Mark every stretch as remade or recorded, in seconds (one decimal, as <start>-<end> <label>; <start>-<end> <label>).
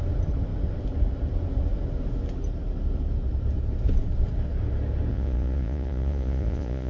0.0-5.1 recorded; 5.1-6.9 remade